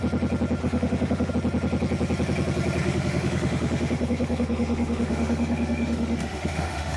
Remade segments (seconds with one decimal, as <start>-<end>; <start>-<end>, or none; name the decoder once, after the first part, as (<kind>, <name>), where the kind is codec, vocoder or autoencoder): 0.6-1.3 (autoencoder, DAC-VAE); 2.8-7.0